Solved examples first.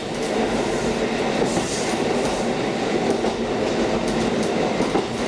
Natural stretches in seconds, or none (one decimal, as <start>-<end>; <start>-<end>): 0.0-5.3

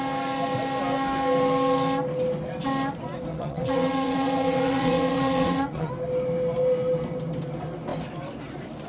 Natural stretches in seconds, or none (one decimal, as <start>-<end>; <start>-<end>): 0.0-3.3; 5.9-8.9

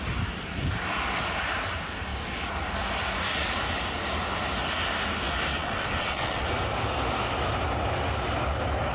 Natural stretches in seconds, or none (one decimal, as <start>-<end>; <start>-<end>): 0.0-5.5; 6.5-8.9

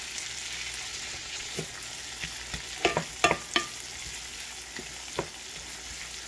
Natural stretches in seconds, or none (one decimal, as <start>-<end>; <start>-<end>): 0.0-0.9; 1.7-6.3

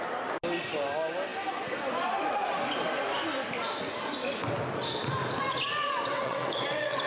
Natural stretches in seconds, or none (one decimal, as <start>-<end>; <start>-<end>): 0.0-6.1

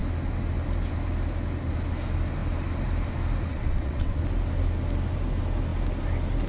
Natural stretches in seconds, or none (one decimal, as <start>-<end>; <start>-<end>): 0.0-3.5; 4.2-6.5

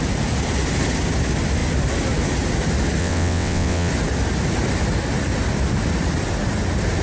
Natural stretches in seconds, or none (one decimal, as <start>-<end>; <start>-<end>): 0.0-3.0; 3.9-7.0